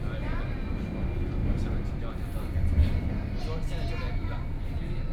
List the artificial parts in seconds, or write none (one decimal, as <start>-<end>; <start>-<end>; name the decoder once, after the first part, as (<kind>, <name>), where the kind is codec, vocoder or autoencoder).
1.4-2.0 (vocoder, BigVGAN v2)

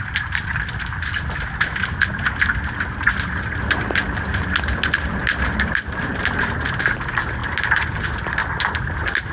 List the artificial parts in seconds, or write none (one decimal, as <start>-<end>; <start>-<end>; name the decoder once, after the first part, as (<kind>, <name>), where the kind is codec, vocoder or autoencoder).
none

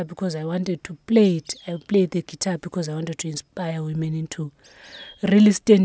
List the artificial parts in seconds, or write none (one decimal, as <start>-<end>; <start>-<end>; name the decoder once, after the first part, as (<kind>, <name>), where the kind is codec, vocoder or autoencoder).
none

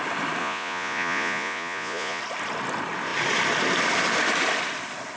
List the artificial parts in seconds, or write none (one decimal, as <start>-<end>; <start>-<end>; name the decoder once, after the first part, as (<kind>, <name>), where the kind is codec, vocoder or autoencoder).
0.4-2.2 (vocoder, Vocos)

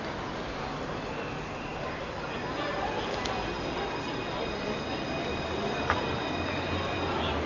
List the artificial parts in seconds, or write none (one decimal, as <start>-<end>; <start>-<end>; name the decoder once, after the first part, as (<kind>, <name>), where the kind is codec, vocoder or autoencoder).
none

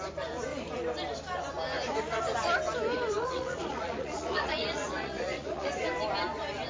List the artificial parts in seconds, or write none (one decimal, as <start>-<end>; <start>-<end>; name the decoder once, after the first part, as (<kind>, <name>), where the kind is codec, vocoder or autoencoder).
3.2-5.7 (vocoder, Vocos)

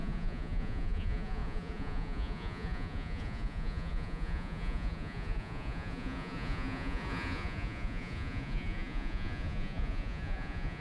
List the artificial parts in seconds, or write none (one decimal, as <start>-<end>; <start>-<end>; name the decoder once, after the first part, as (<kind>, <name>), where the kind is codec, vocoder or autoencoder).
0.0-10.8 (vocoder, Vocos)

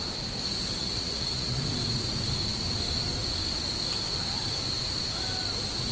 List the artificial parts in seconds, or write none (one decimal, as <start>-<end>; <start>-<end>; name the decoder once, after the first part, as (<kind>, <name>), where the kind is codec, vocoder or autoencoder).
0.8-1.6 (vocoder, Vocos)